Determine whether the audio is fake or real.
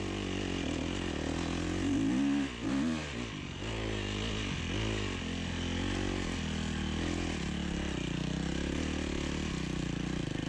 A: real